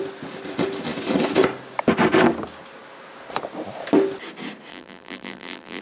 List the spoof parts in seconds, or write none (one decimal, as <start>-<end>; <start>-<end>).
4.7-5.8